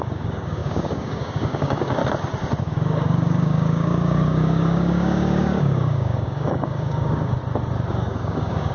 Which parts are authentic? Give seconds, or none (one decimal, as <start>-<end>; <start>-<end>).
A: 2.0-2.6; 7.4-7.9